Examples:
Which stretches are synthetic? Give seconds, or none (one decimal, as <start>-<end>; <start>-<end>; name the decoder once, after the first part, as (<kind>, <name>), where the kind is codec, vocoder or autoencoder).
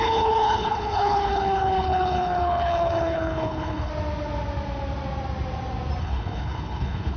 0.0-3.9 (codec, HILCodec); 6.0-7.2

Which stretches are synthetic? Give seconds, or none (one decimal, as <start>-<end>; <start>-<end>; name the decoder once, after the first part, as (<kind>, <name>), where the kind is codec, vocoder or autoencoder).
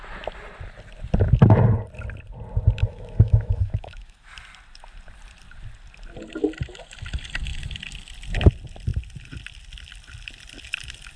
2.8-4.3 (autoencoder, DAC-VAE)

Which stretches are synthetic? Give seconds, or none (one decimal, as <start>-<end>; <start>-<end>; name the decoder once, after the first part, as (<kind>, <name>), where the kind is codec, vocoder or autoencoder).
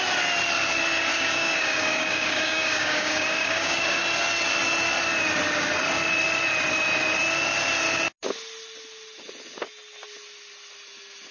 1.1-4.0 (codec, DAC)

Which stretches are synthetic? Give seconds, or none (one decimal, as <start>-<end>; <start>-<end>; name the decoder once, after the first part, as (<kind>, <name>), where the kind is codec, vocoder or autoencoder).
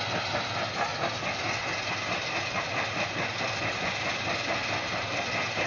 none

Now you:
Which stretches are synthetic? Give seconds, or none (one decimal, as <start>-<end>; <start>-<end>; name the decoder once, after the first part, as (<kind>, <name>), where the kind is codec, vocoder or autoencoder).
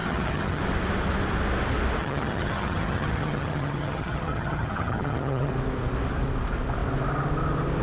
0.0-0.6 (vocoder, HiFi-GAN); 2.0-5.5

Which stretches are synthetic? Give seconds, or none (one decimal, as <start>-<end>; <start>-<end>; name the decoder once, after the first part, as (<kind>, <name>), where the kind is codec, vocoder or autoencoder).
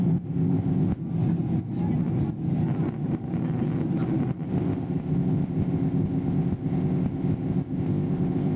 0.0-1.0 (codec, ZipCodec); 4.5-8.6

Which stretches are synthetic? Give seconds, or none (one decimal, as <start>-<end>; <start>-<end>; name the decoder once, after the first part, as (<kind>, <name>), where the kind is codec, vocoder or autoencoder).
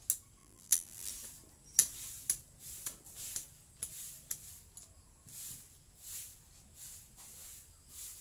0.4-1.1 (vocoder, BigVGAN v2)